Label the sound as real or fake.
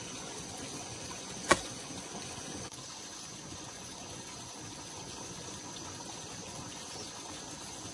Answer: fake